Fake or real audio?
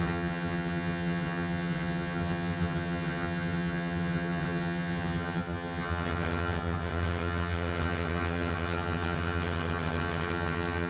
fake